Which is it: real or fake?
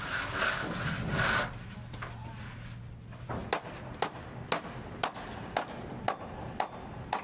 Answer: real